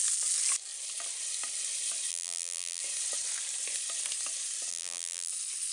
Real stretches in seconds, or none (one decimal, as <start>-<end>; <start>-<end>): 0.0-2.1; 2.8-4.7; 5.3-5.7